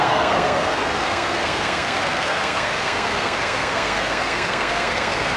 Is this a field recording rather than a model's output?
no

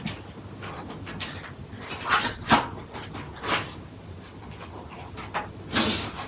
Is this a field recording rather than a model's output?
yes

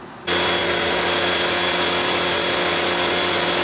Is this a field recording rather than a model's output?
yes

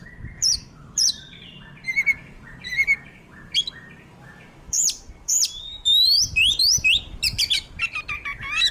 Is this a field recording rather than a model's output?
no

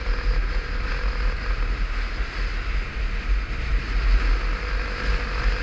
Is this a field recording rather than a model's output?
yes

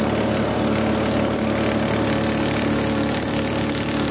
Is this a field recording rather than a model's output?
yes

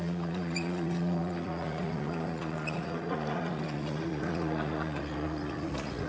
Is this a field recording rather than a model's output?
no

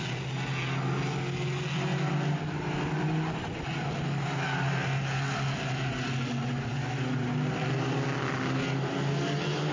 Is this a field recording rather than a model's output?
yes